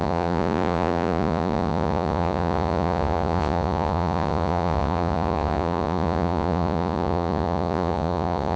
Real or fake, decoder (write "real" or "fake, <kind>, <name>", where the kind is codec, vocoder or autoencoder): fake, vocoder, Vocos